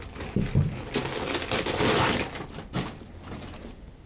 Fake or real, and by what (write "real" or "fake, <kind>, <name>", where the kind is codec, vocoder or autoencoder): real